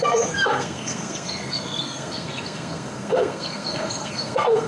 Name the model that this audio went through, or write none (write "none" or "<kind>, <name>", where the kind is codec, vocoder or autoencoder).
codec, SNAC